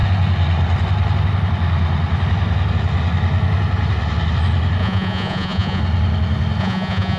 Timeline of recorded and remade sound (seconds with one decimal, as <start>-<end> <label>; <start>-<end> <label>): 0.0-4.8 recorded; 4.8-5.8 remade; 5.8-6.6 recorded; 6.6-7.2 remade